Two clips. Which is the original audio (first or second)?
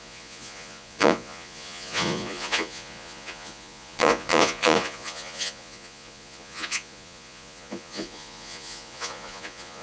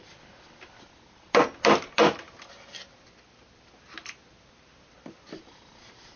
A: second